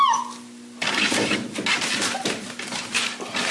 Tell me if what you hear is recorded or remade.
recorded